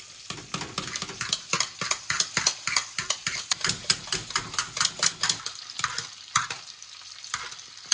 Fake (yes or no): no